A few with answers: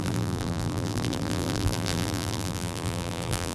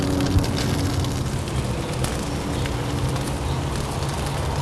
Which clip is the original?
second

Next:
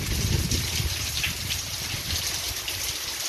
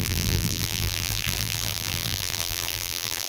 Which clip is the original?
first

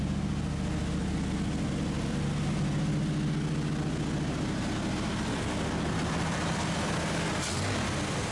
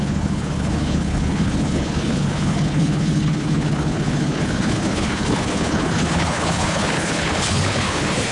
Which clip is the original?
first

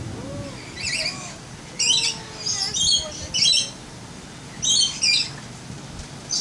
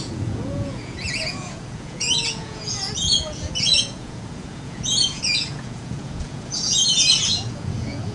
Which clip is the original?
first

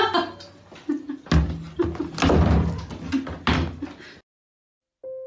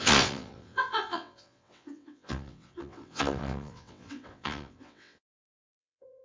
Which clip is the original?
first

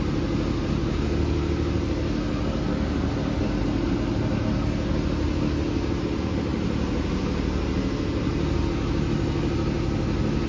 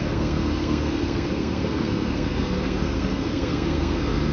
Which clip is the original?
first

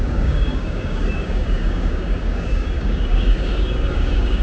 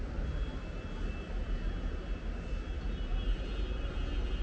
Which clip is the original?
second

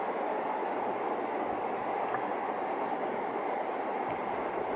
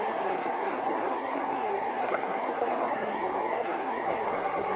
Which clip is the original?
first